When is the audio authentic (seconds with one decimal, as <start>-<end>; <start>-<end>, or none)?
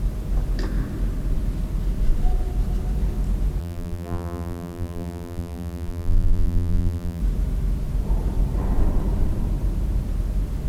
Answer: 0.0-3.6; 7.2-10.7